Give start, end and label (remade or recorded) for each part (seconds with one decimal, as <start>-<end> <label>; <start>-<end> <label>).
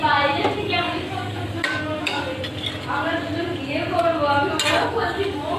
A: 0.0-0.6 recorded; 0.6-2.3 remade; 2.3-4.9 recorded; 4.9-5.6 remade